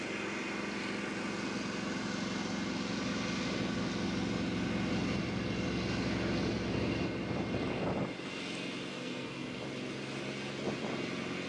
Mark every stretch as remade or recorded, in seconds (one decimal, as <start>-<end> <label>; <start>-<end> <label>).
0.0-8.9 recorded; 8.9-9.6 remade; 9.6-11.5 recorded